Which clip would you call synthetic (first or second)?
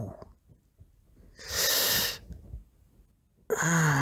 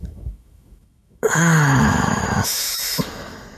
second